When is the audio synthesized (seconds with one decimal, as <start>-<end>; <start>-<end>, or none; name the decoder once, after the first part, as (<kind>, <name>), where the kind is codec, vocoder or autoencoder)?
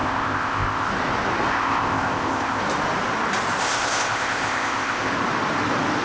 0.0-0.9 (codec, ZipCodec); 1.5-2.6; 3.6-5.1